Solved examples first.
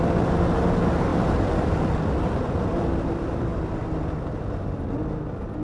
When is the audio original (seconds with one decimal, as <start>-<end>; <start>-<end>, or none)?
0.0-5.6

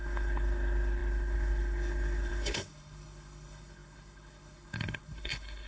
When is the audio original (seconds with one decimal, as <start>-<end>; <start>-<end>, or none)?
none

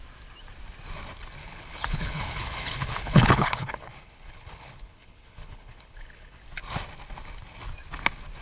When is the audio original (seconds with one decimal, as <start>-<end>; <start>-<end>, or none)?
0.0-1.4; 6.4-8.4

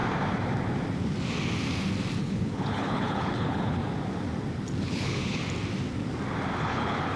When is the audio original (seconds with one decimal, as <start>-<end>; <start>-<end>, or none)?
0.0-2.2; 3.8-4.8; 5.4-6.6

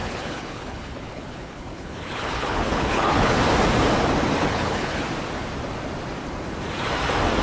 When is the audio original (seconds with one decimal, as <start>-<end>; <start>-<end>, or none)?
3.4-4.4; 5.0-7.4

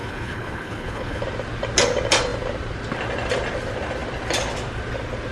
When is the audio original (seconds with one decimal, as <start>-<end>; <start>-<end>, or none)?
1.2-5.3

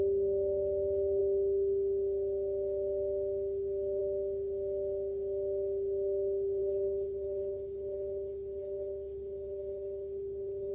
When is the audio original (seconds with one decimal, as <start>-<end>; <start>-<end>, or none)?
0.0-6.6